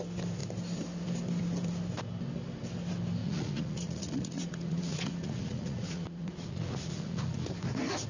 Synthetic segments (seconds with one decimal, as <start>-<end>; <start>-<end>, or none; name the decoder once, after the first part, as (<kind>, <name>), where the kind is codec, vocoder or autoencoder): 3.2-7.5 (vocoder, Vocos)